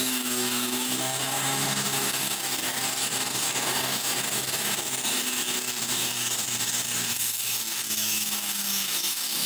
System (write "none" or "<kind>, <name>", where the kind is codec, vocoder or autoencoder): codec, DAC